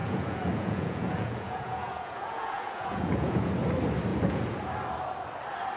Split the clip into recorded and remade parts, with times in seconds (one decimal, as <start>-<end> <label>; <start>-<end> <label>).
0.0-3.5 remade; 3.5-4.1 recorded; 4.1-4.7 remade; 4.7-5.8 recorded